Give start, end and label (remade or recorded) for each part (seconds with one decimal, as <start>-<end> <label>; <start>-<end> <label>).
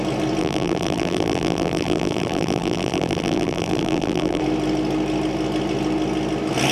0.0-0.4 recorded; 0.4-4.4 remade; 4.4-6.7 recorded